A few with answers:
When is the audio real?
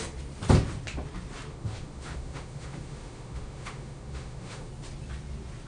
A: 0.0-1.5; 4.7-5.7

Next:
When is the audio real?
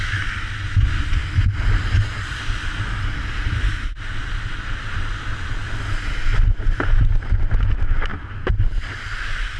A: 0.0-9.6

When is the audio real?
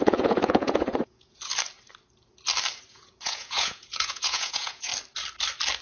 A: 1.5-2.9; 4.9-5.8